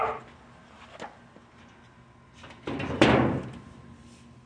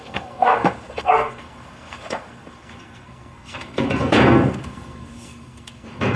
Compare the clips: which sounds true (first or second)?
first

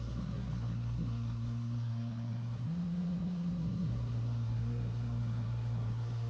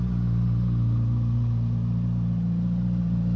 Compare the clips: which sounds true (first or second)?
second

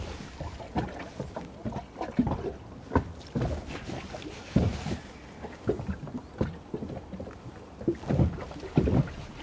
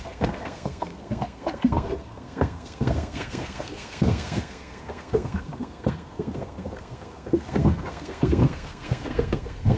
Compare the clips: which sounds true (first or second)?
first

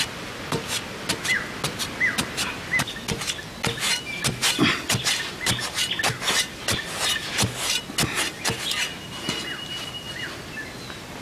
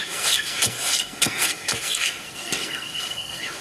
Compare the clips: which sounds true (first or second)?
first